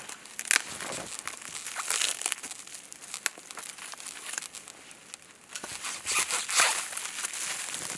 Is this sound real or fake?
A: real